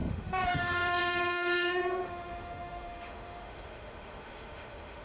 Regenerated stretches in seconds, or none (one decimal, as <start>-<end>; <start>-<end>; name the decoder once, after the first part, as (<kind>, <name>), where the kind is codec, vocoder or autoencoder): 0.0-5.0 (autoencoder, DAC-VAE)